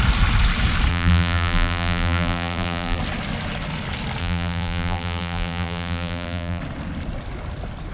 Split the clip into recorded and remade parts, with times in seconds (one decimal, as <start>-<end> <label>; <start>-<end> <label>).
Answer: 0.0-0.9 recorded; 0.9-3.0 remade; 3.0-4.2 recorded; 4.2-6.6 remade; 6.6-7.9 recorded